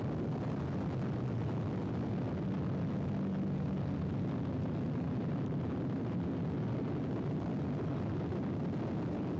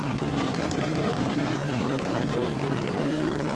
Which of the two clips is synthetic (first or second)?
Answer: second